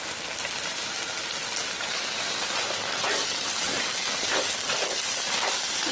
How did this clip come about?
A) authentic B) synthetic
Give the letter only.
A